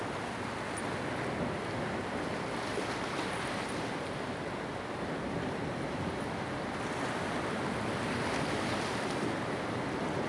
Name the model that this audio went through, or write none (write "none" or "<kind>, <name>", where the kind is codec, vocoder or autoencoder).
none